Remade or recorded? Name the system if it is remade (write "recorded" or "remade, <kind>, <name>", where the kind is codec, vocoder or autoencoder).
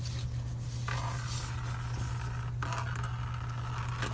recorded